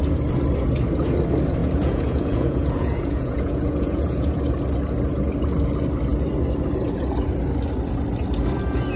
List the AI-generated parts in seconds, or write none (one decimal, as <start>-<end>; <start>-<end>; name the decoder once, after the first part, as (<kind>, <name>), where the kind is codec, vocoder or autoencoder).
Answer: 1.6-4.4 (vocoder, Vocos)